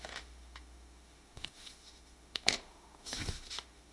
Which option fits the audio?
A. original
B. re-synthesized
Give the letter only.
B